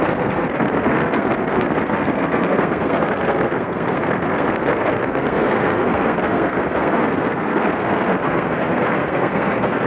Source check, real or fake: fake